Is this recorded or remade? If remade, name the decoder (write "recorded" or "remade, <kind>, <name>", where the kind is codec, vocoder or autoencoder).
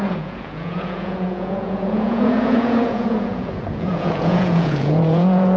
remade, vocoder, Vocos